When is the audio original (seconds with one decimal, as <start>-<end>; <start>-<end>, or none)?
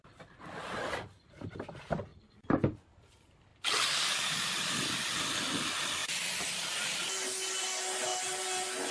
0.0-8.9